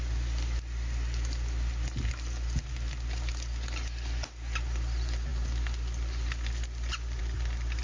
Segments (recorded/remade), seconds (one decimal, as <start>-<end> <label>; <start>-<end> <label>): 0.0-7.8 recorded